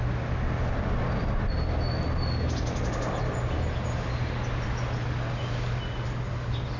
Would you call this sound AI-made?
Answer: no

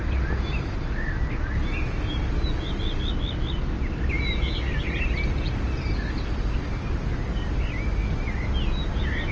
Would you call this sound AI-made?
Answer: no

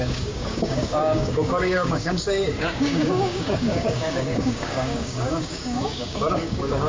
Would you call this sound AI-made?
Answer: yes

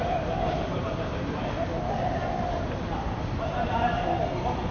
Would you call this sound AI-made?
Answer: no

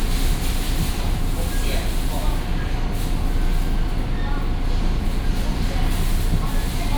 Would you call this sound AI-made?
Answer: no